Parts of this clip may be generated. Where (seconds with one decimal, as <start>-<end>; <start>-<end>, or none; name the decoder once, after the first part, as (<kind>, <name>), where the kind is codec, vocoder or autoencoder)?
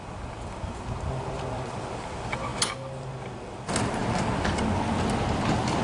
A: none